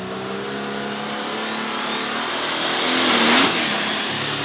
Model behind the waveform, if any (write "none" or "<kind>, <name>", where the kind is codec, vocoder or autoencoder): none